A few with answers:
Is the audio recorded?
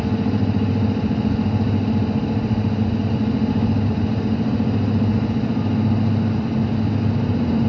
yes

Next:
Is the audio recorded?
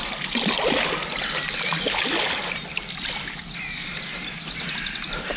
yes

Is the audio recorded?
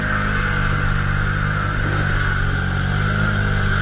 yes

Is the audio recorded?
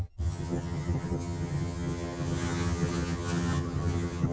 no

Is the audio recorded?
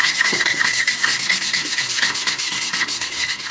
no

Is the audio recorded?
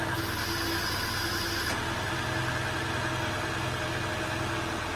yes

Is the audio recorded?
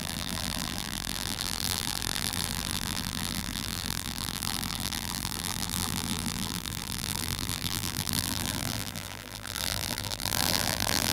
no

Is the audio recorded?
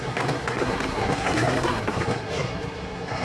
no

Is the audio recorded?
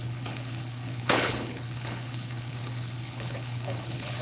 no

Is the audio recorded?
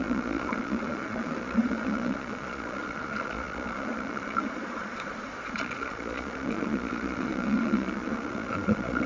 no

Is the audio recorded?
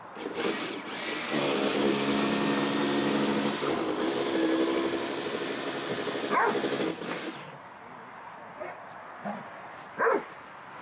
yes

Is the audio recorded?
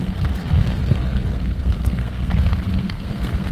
no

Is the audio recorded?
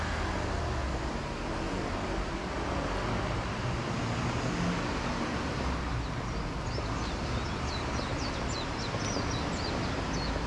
yes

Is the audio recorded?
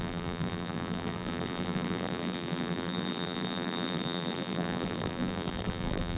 no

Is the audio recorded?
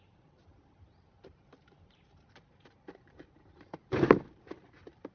no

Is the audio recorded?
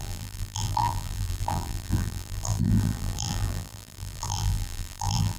no